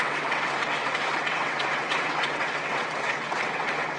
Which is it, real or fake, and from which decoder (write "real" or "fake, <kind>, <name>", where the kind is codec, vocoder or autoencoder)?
fake, vocoder, WaveNeXt